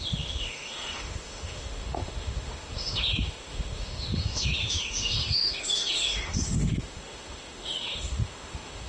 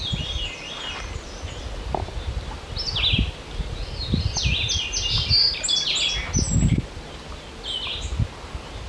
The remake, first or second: first